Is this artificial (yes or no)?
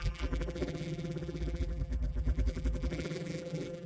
yes